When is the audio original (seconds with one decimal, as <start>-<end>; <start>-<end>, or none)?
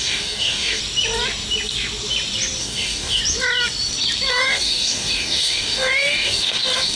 0.8-2.6; 3.2-4.3